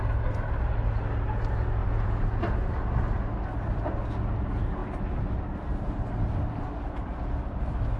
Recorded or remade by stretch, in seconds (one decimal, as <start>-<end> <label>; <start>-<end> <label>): 0.0-1.8 recorded; 1.8-2.4 remade; 2.4-8.0 recorded